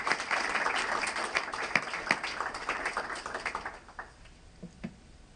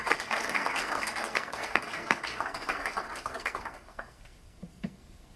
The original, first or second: first